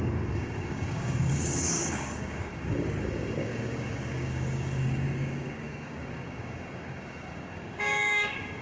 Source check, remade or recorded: remade